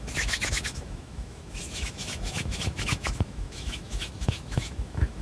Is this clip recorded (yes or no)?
no